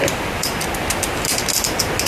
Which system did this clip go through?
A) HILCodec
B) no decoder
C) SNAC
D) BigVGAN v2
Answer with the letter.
B